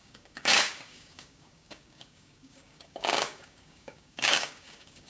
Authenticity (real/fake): fake